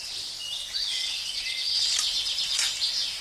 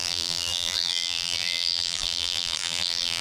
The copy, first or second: second